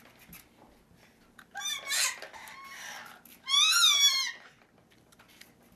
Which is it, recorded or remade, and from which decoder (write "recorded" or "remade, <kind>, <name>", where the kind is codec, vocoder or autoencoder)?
recorded